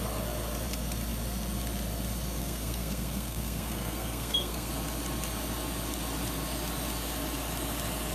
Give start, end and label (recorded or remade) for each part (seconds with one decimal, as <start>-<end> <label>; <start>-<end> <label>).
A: 0.0-2.4 recorded; 2.4-4.7 remade; 4.7-8.1 recorded